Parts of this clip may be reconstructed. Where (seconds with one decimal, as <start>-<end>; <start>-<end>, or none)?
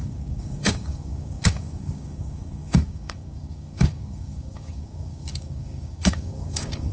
0.0-6.9